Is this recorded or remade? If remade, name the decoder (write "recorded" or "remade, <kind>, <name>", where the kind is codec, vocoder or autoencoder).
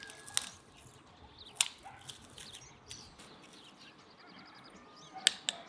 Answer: recorded